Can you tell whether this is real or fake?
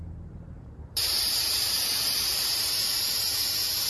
fake